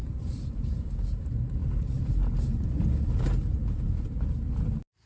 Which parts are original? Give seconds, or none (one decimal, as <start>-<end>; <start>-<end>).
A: 0.9-1.6; 2.7-3.6; 4.1-5.1